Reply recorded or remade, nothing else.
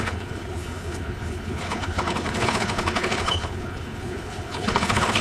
remade